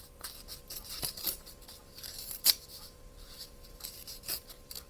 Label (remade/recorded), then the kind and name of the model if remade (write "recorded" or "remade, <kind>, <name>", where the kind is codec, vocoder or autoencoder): remade, vocoder, BigVGAN v2